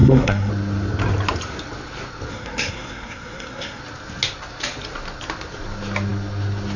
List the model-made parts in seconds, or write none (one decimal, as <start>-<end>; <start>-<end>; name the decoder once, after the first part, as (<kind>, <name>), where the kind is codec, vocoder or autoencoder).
0.0-0.5 (codec, SNAC); 2.3-3.8